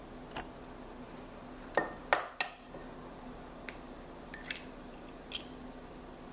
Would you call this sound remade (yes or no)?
no